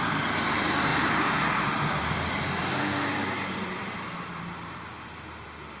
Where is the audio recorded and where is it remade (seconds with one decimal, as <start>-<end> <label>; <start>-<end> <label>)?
0.0-0.9 recorded; 0.9-4.4 remade; 4.4-5.8 recorded